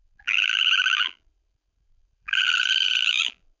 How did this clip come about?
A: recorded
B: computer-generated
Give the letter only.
B